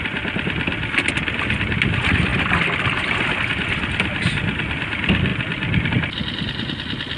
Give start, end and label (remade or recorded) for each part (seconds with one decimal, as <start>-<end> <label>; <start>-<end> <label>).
0.0-7.2 recorded